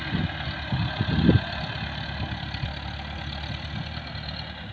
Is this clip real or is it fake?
real